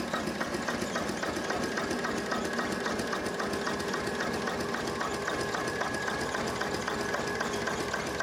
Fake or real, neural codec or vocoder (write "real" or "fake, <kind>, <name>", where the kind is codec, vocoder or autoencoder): real